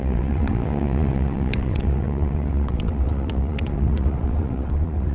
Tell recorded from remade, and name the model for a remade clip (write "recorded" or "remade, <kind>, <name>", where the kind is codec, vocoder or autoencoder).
remade, vocoder, WaveNeXt